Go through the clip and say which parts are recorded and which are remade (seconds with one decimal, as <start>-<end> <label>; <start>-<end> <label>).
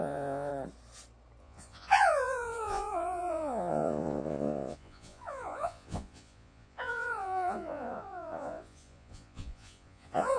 0.0-0.5 remade; 0.5-1.4 recorded; 1.4-10.4 remade